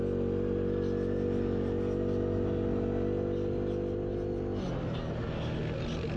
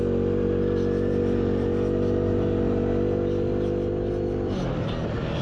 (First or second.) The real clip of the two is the first